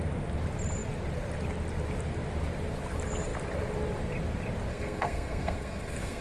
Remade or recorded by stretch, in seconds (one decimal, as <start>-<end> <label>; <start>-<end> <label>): 0.0-4.7 recorded; 4.7-6.2 remade